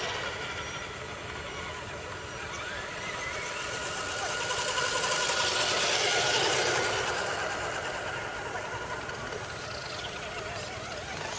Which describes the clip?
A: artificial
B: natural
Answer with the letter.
B